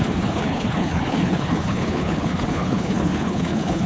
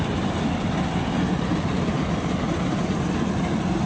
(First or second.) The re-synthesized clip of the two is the first